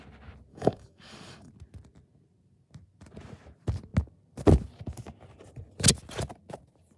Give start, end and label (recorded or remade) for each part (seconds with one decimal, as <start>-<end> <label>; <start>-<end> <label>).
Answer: 0.0-0.5 recorded; 0.5-1.5 remade; 1.5-7.0 recorded